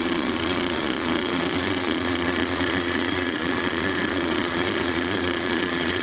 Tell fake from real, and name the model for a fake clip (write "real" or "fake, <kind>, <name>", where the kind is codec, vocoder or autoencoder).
fake, vocoder, Vocos